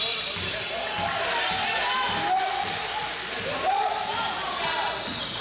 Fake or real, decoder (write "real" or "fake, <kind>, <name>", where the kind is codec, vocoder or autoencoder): real